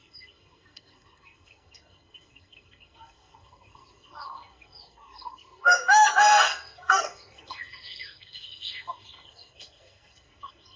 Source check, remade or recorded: remade